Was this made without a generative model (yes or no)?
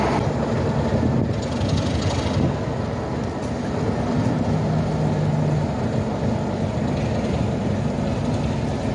yes